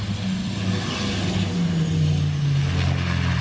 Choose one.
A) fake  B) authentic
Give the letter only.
B